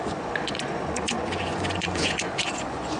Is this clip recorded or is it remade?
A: remade